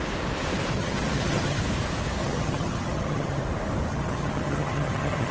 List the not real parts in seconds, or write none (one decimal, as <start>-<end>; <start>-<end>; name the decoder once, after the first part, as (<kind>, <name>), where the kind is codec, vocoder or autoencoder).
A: 0.8-1.6 (vocoder, HiFi-GAN); 2.2-3.4; 3.9-5.3